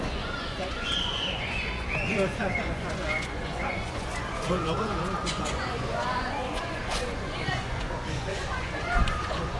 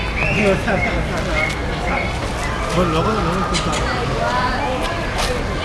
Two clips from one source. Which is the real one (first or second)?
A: second